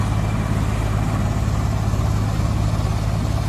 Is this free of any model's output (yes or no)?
yes